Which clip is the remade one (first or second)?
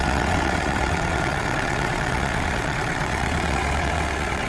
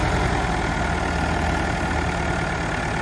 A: first